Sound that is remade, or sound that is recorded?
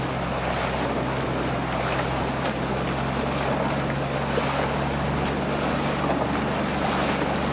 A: recorded